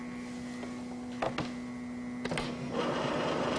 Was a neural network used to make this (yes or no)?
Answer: no